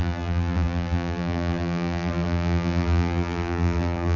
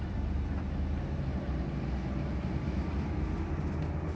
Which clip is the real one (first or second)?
second